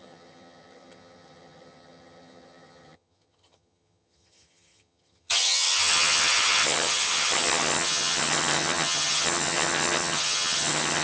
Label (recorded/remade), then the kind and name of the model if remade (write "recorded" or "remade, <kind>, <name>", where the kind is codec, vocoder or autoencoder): remade, vocoder, HiFi-GAN